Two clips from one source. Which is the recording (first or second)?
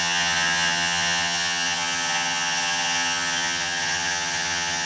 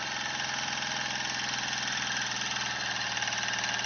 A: second